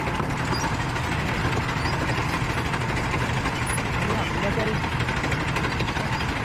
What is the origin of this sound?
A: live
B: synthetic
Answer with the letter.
A